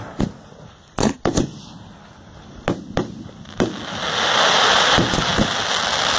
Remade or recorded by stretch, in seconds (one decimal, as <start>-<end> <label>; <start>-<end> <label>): 0.0-6.2 recorded